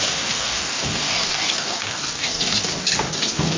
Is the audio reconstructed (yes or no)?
yes